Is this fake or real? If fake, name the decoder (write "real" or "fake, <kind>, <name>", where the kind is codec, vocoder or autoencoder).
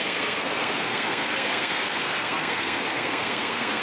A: fake, codec, SNAC